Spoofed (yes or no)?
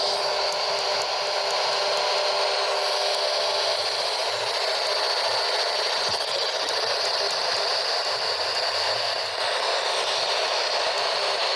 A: no